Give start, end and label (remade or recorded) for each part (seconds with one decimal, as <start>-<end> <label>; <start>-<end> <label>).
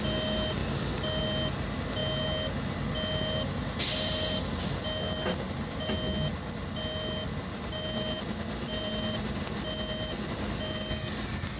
0.0-11.6 recorded